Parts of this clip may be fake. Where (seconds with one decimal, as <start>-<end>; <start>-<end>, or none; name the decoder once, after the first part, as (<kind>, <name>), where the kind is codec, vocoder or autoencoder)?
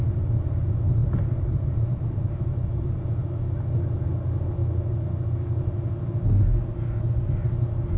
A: 1.0-2.3 (vocoder, BigVGAN v2)